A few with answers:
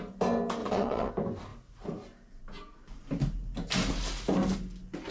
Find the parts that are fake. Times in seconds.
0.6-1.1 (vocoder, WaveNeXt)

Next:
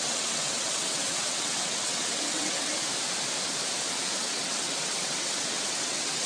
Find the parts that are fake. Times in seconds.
0.0-2.7 (vocoder, WaveNeXt); 4.2-6.3

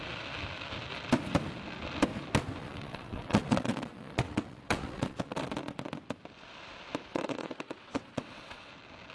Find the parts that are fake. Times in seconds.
2.6-5.5 (vocoder, WaveNeXt); 7.1-8.7